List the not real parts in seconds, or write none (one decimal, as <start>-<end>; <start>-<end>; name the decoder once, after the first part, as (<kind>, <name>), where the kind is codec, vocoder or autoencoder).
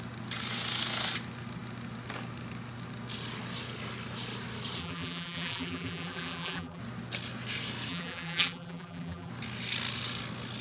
4.8-6.8 (vocoder, BigVGAN v2); 7.9-9.3